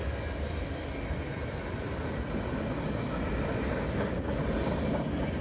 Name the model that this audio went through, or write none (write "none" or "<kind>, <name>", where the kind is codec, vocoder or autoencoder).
none